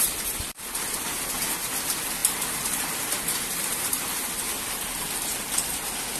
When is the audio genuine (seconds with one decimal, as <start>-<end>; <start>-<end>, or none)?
none